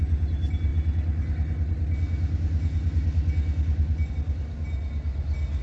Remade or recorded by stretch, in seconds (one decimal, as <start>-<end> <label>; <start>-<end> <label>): 0.0-5.6 recorded